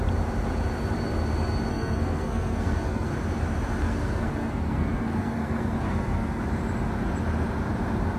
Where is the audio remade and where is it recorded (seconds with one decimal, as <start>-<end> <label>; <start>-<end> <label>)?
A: 0.0-1.7 recorded; 1.7-3.1 remade; 3.1-3.8 recorded; 3.8-6.4 remade; 6.4-8.2 recorded